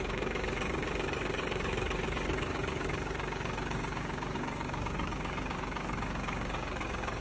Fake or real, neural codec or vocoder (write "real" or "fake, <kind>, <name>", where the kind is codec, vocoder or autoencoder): fake, codec, DAC